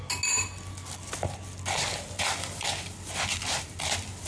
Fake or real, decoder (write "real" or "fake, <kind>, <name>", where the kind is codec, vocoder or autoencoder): real